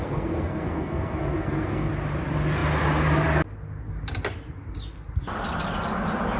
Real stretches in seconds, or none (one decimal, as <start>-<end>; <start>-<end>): 1.9-6.4